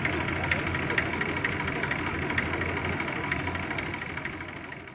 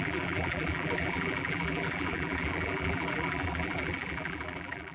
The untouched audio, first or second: first